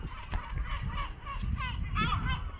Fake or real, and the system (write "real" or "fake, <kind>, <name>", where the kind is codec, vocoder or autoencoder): real